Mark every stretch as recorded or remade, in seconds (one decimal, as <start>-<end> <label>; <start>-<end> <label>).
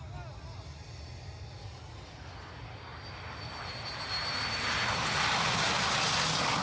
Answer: 0.0-6.6 recorded